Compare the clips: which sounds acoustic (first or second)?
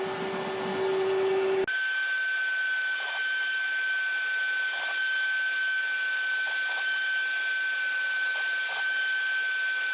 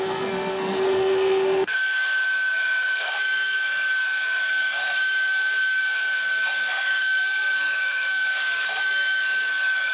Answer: first